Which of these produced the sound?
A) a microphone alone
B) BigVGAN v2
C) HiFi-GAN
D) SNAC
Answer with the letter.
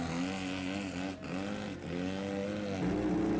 A